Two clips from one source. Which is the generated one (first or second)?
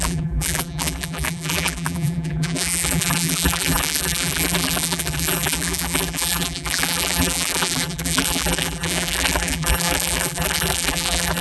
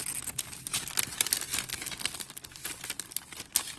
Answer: first